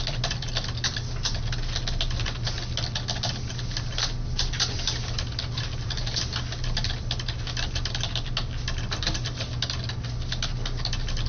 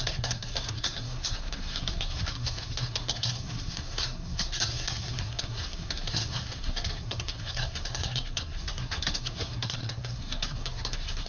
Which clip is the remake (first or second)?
second